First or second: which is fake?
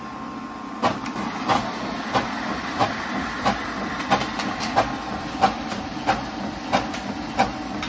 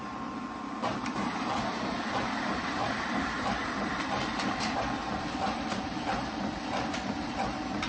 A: second